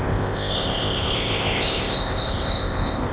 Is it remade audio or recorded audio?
remade